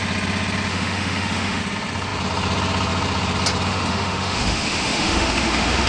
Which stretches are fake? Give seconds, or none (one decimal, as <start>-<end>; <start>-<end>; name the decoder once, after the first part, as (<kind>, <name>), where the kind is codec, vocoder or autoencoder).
0.7-1.6 (autoencoder, DAC-VAE); 3.7-5.9